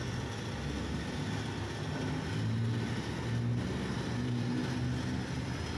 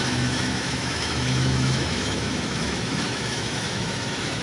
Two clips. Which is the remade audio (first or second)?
second